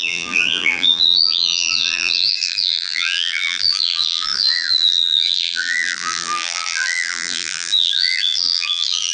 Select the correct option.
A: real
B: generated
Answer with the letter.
B